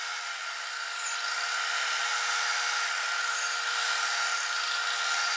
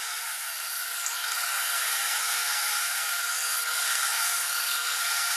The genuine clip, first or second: first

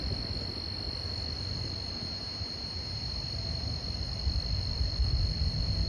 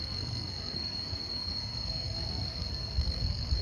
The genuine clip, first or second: first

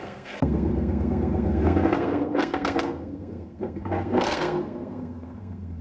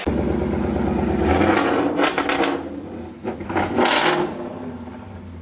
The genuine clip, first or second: second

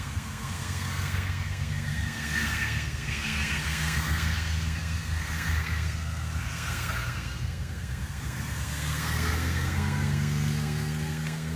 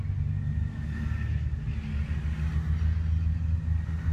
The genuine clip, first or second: second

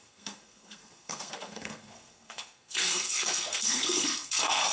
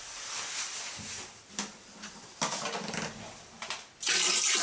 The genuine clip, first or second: second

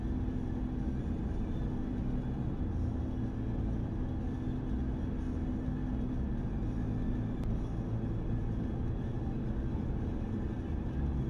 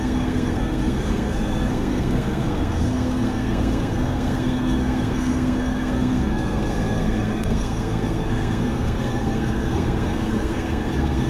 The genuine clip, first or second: first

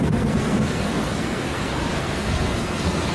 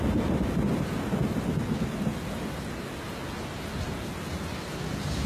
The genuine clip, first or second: second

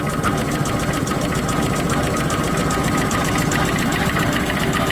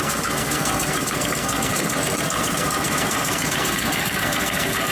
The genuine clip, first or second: first